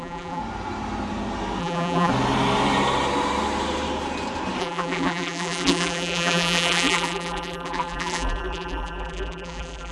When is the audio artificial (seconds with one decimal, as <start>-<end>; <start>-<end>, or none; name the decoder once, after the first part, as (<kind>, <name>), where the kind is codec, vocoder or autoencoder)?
0.0-0.4 (vocoder, BigVGAN v2); 1.6-2.1; 4.6-9.9